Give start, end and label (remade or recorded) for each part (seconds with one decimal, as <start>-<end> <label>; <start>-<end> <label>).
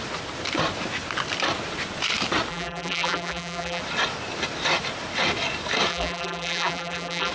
0.0-2.5 recorded; 2.5-3.8 remade; 3.8-5.9 recorded; 5.9-7.3 remade